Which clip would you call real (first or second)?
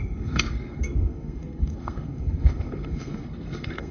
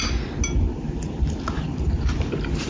second